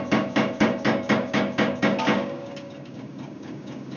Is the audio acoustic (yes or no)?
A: no